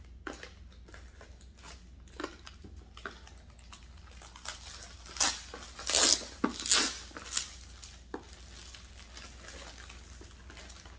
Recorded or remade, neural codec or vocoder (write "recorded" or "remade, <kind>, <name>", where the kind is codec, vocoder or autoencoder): recorded